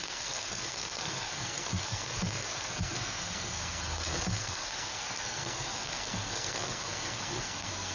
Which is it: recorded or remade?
remade